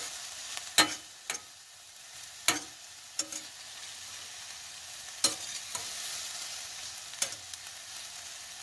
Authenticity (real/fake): real